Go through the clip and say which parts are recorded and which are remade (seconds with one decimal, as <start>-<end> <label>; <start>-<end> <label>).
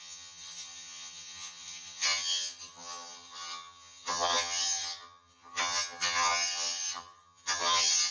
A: 0.0-8.1 remade